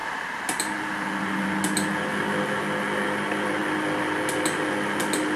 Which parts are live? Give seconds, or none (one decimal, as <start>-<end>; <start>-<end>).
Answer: 0.0-5.4